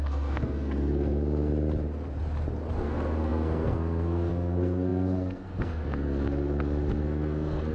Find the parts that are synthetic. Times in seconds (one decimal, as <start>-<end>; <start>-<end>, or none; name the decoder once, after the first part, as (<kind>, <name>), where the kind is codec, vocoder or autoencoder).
0.0-1.5 (codec, SNAC); 2.7-7.7